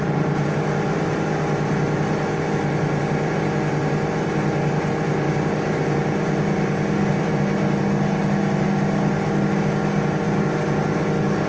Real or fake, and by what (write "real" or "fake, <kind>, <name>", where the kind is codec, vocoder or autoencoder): real